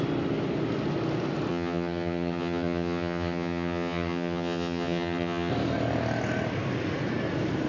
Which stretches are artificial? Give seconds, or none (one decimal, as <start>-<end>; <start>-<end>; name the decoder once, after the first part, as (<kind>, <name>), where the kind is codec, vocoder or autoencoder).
1.5-5.5 (vocoder, HiFi-GAN)